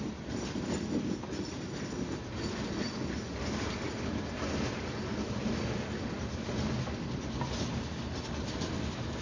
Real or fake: real